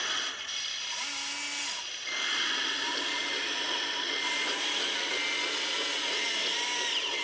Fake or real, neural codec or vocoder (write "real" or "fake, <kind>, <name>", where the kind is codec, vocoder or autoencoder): real